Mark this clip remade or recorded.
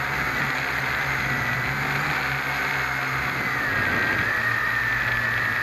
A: recorded